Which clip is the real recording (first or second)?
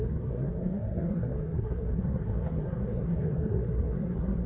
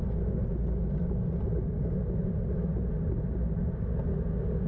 second